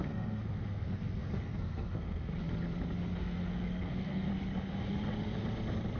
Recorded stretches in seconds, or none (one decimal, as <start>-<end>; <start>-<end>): 2.3-3.2; 4.3-6.0